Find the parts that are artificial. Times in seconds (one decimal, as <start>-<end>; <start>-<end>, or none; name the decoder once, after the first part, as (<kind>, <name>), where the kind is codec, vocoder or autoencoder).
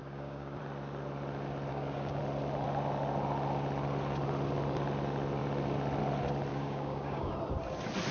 0.0-0.6 (codec, DAC); 1.7-2.2; 6.5-7.3